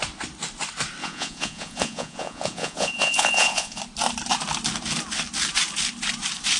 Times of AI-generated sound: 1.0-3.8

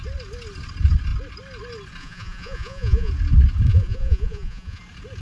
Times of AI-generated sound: 2.0-3.1; 3.7-4.8

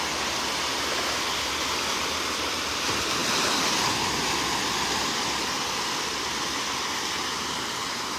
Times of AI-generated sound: 0.0-3.2

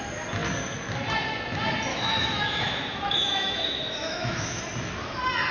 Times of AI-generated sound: 1.9-4.6

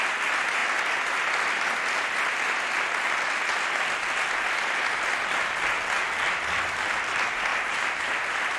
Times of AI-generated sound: 7.5-8.1

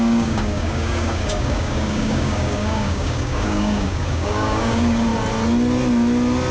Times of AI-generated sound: 0.0-5.1

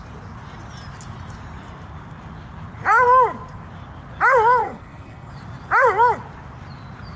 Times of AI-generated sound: 4.6-5.3